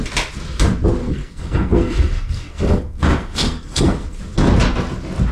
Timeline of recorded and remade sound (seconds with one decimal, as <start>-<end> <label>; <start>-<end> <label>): 0.0-1.0 recorded; 1.0-4.2 remade; 4.2-5.3 recorded